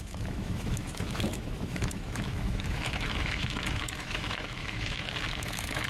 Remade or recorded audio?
remade